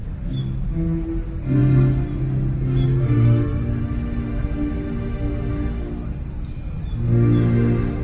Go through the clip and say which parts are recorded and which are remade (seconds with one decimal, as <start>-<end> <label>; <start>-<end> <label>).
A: 0.0-8.0 recorded